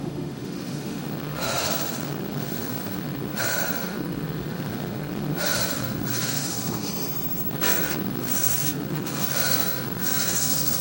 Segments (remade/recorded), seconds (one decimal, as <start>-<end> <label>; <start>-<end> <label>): 0.0-6.9 remade; 6.9-7.5 recorded; 7.5-10.8 remade